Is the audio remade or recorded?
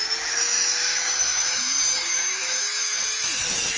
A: remade